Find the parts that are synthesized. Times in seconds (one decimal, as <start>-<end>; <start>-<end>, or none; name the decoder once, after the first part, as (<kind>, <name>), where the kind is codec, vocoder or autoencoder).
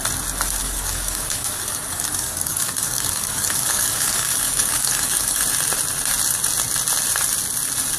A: 0.6-5.4 (codec, DAC)